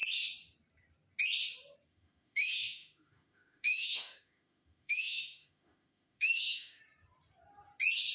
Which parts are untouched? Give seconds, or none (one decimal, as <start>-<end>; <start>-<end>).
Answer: 0.0-1.9; 6.8-8.1